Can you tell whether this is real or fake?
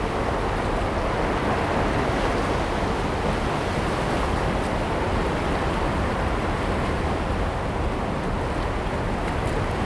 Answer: real